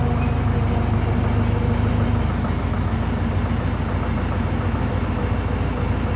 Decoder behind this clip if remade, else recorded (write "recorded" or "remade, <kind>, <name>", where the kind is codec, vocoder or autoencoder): recorded